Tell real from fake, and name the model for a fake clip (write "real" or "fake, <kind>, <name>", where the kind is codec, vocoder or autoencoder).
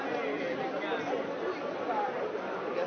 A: real